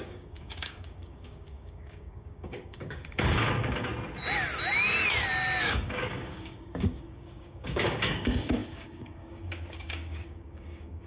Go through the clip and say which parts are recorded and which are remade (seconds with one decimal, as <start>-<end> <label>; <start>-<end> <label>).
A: 0.0-3.9 remade; 3.9-5.6 recorded; 5.6-11.1 remade